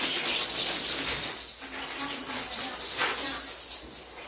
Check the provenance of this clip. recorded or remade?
recorded